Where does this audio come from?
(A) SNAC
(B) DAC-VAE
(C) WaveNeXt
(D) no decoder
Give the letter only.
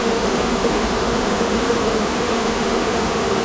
B